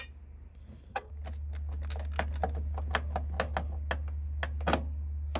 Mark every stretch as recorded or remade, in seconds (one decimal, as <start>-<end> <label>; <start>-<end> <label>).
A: 0.0-0.5 recorded; 0.5-1.1 remade; 1.1-5.4 recorded